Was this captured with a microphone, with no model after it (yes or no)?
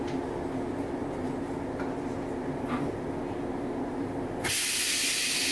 yes